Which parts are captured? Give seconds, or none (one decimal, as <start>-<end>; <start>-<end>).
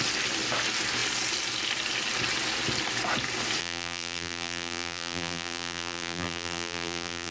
0.0-3.6